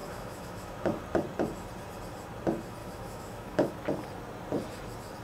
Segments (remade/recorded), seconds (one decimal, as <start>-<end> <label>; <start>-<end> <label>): 0.0-1.0 remade; 1.0-2.8 recorded; 2.8-3.7 remade; 3.7-5.2 recorded

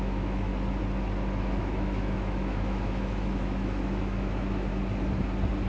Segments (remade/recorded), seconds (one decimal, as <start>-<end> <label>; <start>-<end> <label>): 0.0-0.5 remade; 0.5-1.4 recorded; 1.4-4.7 remade; 4.7-5.7 recorded